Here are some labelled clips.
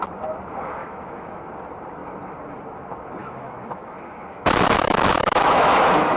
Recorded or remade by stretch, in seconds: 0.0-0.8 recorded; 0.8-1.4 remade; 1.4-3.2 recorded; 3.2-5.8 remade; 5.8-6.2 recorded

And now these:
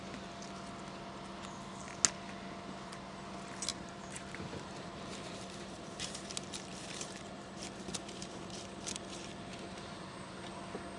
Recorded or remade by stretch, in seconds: 0.0-3.7 recorded; 3.7-6.3 remade; 6.3-6.7 recorded; 6.7-8.6 remade; 8.6-9.5 recorded; 9.5-10.5 remade; 10.5-11.0 recorded